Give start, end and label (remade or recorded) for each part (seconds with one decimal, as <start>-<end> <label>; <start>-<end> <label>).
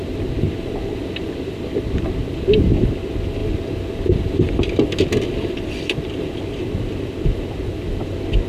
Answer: 0.0-8.5 recorded